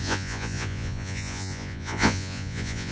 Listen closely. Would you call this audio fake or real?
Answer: fake